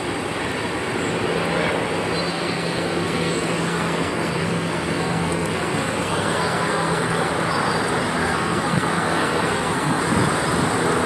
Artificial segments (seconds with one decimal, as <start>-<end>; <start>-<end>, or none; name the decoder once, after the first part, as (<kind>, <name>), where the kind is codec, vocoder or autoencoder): 2.3-7.3 (codec, SNAC); 8.2-10.0